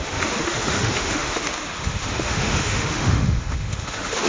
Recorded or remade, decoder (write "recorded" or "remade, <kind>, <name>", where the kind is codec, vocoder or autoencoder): remade, autoencoder, DAC-VAE